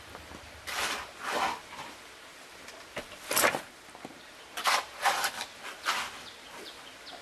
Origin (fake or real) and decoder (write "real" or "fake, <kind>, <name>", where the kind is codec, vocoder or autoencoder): real